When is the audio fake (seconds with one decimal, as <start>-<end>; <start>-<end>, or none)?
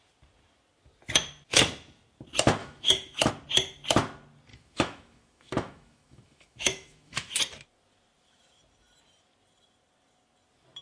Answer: 2.6-3.3; 4.5-7.4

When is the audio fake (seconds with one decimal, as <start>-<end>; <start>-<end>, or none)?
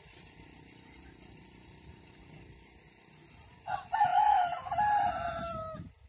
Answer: none